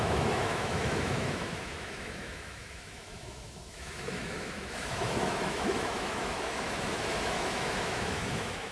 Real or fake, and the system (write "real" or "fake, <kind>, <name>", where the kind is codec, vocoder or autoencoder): fake, autoencoder, DAC-VAE